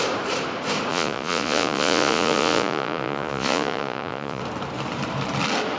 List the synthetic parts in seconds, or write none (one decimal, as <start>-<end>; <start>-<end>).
0.9-4.4